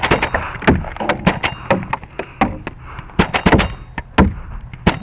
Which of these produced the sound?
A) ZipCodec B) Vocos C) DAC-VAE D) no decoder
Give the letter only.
D